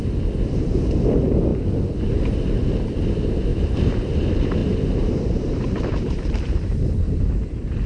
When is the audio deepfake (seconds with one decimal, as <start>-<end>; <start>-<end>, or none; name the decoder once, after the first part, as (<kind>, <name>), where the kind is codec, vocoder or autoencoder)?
3.5-4.1 (vocoder, BigVGAN v2); 4.6-7.1